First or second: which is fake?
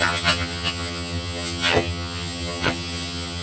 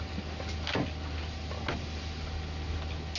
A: first